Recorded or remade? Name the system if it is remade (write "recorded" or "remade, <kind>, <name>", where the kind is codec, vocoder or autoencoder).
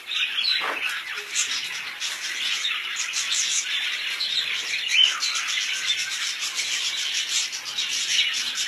recorded